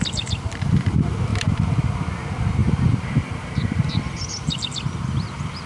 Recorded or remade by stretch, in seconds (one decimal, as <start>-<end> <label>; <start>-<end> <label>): 0.0-5.7 remade